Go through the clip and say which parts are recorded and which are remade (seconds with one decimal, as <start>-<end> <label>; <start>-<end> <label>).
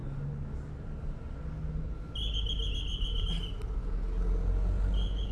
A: 0.0-5.3 recorded